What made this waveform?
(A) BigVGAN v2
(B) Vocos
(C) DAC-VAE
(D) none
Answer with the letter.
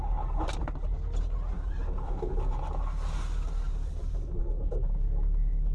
D